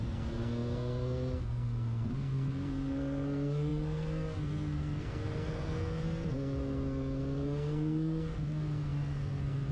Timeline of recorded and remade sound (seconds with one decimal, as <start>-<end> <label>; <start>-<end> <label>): 0.0-9.7 remade